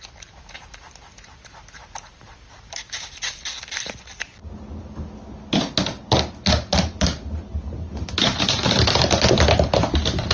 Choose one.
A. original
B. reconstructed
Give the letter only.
A